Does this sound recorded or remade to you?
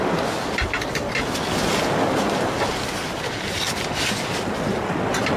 recorded